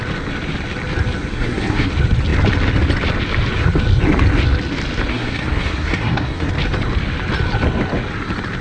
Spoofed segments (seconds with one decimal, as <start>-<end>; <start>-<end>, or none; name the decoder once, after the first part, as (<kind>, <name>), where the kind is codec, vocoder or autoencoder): 1.3-1.9 (codec, SNAC); 5.1-6.5

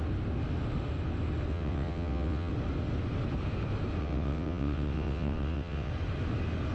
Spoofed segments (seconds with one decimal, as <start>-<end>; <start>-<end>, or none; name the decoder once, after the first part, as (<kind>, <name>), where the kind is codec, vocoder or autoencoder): 1.5-2.5 (vocoder, WaveNeXt); 4.0-5.9

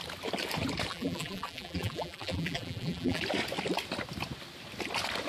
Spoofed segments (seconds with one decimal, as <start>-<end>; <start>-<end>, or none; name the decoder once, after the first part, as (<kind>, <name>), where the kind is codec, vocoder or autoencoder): 0.9-3.2 (vocoder, BigVGAN v2)

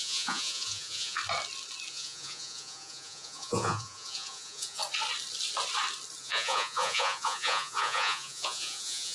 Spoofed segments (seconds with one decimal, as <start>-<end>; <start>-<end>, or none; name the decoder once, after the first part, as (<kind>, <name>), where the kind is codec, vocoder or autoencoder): 0.0-1.2 (vocoder, Vocos); 1.9-4.8; 6.2-9.1

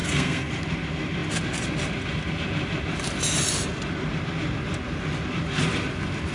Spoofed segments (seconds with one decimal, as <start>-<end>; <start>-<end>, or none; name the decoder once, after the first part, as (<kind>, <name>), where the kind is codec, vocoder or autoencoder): 0.0-0.5 (codec, SNAC)

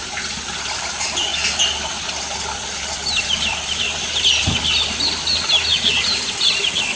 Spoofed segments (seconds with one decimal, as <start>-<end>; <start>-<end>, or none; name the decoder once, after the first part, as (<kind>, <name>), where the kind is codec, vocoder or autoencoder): none

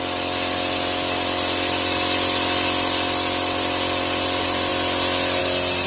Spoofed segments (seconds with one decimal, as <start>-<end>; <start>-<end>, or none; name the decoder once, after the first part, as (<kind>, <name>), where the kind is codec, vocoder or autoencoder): none